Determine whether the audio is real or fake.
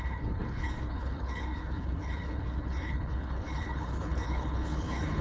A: fake